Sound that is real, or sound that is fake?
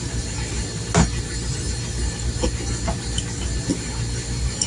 real